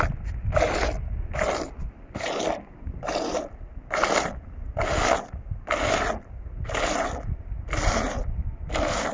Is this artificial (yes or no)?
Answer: no